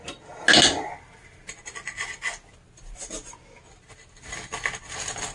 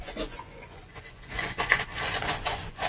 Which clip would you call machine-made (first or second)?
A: second